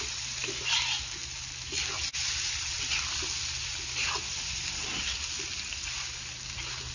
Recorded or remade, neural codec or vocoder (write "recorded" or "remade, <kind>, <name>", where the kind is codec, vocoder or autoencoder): recorded